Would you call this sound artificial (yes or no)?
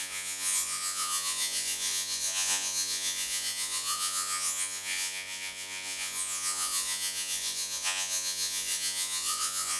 yes